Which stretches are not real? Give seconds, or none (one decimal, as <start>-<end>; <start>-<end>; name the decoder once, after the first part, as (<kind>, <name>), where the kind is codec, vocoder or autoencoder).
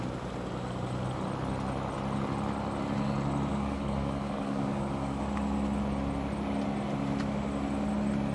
3.5-5.2 (codec, DAC)